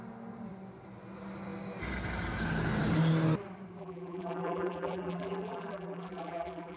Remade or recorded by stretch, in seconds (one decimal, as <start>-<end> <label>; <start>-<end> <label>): 0.0-3.8 recorded; 3.8-6.8 remade